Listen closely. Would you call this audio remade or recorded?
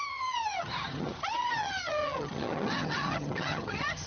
remade